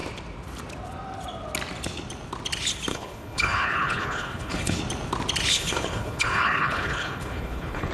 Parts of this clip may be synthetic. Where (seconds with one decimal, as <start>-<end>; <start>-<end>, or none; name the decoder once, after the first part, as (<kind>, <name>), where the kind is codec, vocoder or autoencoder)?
2.9-4.8 (codec, HILCodec); 5.5-7.9